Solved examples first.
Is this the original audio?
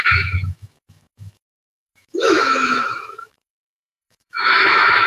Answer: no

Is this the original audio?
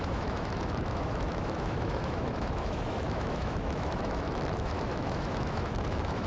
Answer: no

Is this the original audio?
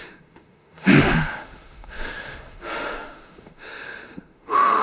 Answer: no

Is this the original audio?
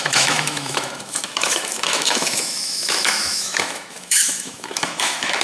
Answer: no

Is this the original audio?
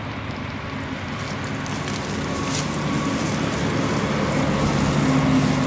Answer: yes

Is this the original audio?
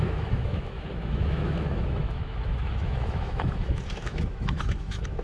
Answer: no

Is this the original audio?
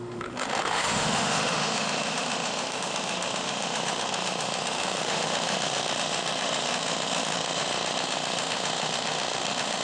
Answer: no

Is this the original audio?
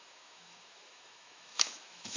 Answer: no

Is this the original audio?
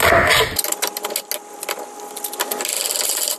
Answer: yes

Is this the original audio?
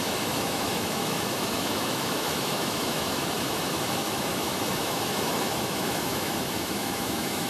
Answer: no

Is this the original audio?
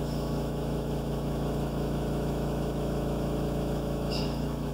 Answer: no